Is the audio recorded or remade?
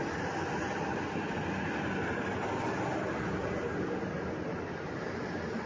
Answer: recorded